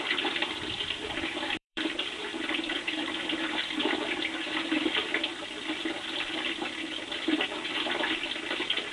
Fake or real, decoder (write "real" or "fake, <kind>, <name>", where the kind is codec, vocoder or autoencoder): fake, vocoder, BigVGAN v2